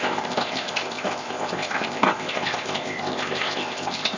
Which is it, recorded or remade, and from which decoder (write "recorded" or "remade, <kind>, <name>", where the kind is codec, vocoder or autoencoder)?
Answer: remade, codec, ZipCodec